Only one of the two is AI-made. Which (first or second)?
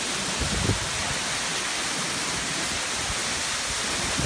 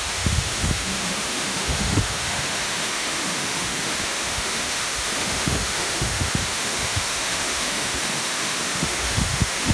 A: second